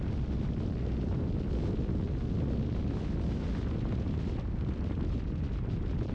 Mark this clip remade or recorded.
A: recorded